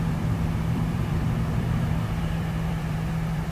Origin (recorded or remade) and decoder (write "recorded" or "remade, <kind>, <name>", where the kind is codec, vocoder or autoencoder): remade, vocoder, BigVGAN v2